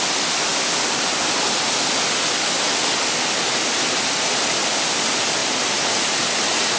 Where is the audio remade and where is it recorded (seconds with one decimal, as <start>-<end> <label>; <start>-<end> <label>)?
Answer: 0.0-6.8 recorded